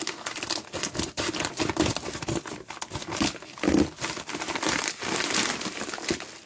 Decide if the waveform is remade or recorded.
recorded